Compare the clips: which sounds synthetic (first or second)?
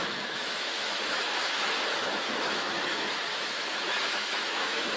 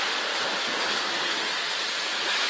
first